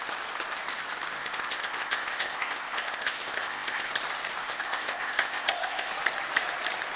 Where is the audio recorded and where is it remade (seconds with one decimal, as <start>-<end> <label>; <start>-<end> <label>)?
0.0-1.2 recorded; 1.2-3.9 remade; 3.9-4.4 recorded; 4.4-5.9 remade; 5.9-7.0 recorded